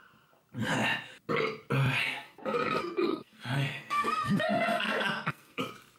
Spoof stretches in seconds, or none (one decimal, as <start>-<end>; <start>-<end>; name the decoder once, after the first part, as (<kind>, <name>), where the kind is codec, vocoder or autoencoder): 2.0-5.6 (codec, SNAC)

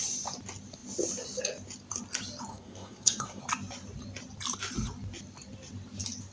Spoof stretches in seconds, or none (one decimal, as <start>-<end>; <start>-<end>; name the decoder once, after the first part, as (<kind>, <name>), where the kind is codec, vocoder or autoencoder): 2.5-3.4 (codec, SNAC)

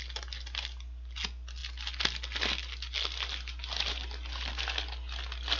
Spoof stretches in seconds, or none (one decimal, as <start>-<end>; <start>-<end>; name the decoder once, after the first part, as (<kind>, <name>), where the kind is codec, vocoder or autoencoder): none

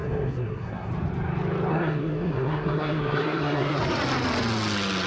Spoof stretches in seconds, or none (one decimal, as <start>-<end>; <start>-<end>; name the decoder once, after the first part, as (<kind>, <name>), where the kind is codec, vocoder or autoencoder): 0.0-0.9 (codec, SNAC); 1.7-3.8